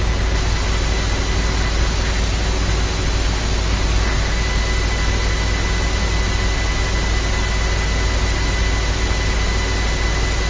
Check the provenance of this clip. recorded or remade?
recorded